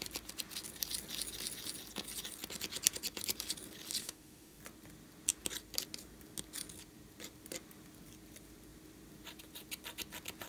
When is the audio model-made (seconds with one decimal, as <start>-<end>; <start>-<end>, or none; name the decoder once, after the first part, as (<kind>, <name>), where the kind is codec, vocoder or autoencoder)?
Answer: 4.0-4.6 (autoencoder, DAC-VAE)